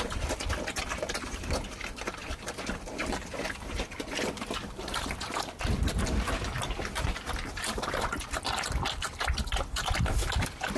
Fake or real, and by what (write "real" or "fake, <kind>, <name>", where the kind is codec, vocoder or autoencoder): fake, vocoder, BigVGAN v2